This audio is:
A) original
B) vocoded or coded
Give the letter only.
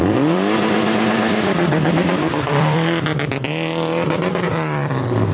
B